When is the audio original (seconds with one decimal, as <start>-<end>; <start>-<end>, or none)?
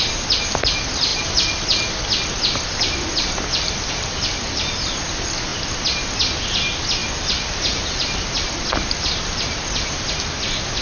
0.0-10.8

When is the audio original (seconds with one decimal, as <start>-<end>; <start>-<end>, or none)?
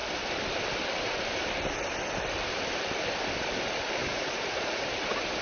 0.0-4.0; 4.9-5.4